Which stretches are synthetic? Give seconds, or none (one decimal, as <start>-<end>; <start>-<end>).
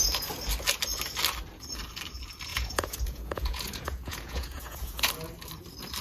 2.5-5.1